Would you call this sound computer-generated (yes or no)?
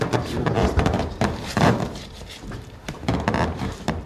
yes